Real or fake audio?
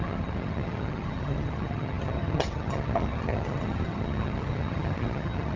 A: fake